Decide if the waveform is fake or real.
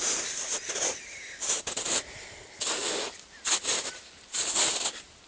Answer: real